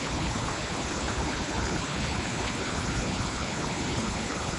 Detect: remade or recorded remade